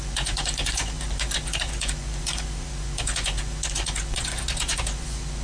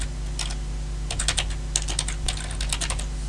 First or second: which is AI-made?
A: first